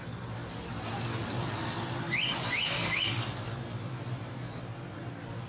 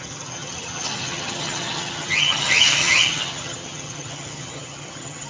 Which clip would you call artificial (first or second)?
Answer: second